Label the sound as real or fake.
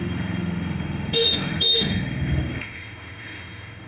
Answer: fake